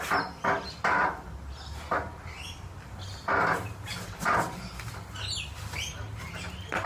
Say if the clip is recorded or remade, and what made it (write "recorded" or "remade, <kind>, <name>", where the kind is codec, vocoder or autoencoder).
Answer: recorded